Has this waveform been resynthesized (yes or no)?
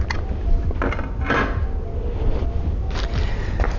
no